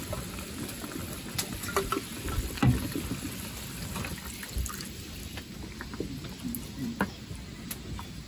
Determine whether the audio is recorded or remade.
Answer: recorded